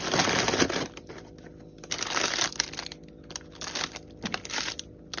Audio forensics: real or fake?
real